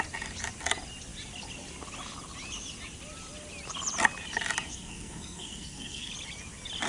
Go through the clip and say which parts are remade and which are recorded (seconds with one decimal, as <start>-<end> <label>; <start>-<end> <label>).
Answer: 0.0-4.7 recorded; 4.7-6.1 remade; 6.1-6.9 recorded